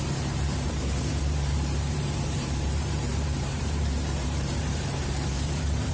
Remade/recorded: remade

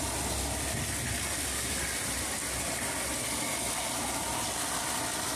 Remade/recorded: recorded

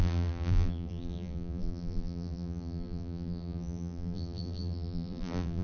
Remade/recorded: remade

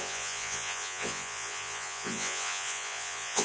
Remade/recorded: remade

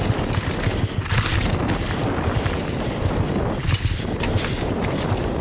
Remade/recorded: recorded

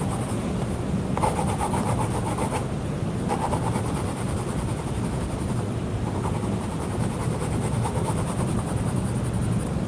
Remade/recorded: remade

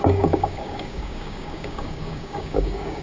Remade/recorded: remade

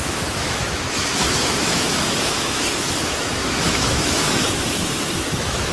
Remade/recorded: remade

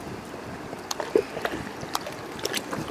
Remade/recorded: recorded